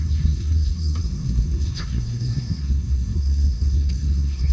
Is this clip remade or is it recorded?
remade